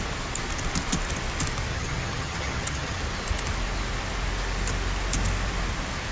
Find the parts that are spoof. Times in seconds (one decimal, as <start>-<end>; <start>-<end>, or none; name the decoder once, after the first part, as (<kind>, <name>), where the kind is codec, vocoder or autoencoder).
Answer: 1.7-3.0 (vocoder, HiFi-GAN)